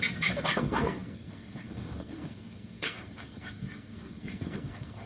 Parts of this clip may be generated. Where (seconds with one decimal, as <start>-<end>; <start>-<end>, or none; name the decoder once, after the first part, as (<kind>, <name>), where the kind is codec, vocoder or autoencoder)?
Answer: 0.0-5.1 (codec, SNAC)